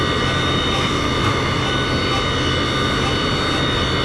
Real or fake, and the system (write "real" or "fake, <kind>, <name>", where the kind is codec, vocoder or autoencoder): real